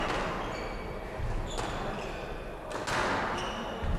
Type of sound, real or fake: real